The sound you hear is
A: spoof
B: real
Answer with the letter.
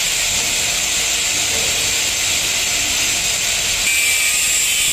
B